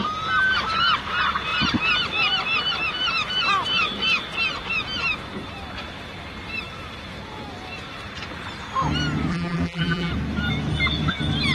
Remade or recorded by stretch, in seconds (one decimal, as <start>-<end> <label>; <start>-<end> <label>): 0.0-9.3 recorded; 9.3-10.1 remade; 10.1-11.5 recorded